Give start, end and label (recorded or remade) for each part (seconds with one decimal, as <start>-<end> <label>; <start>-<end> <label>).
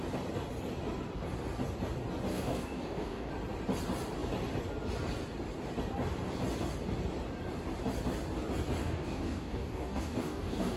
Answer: 0.0-2.3 recorded; 2.3-3.3 remade; 3.3-8.8 recorded; 8.8-10.8 remade